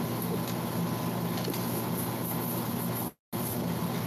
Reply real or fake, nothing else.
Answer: real